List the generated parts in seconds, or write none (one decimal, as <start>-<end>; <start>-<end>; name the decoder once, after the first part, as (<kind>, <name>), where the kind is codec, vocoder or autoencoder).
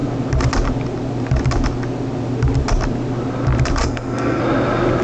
3.8-4.4 (codec, SNAC)